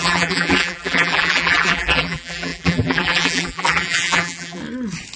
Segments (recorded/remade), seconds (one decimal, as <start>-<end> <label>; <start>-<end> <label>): 0.0-4.6 remade; 4.6-5.2 recorded